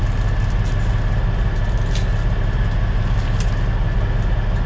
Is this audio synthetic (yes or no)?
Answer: no